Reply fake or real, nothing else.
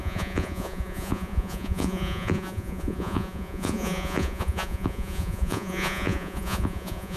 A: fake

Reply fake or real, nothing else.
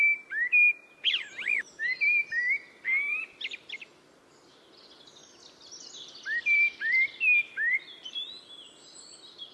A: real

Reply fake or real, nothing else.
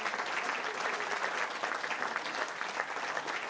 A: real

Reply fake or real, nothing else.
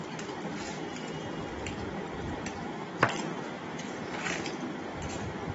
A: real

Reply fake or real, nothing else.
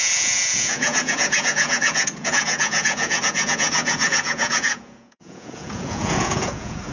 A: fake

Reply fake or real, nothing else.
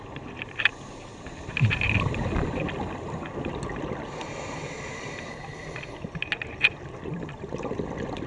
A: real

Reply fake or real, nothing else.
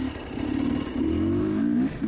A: real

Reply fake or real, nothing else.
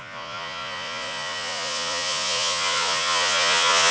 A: fake